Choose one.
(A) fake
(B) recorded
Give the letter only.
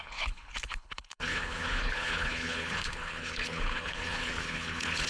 A